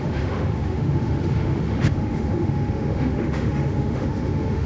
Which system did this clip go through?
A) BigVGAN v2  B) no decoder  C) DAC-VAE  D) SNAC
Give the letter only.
C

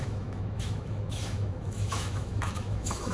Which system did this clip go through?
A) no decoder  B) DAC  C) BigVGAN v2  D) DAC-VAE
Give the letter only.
D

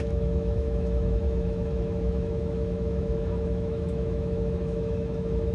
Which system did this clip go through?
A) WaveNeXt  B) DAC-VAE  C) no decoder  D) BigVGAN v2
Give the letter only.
B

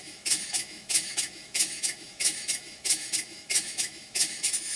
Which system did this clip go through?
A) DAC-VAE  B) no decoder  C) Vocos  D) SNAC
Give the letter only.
A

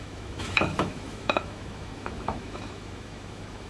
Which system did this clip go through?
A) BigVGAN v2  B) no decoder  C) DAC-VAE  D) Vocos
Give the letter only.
C